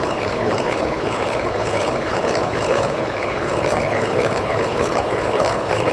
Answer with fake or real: fake